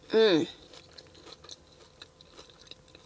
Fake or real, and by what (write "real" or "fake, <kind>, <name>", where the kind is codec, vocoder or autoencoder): real